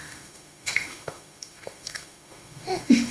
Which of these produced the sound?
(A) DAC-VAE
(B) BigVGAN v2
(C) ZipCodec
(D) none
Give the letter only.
A